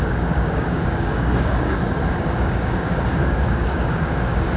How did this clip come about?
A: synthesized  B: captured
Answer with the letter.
A